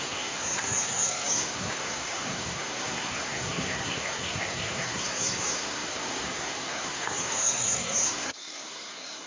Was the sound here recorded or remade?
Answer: remade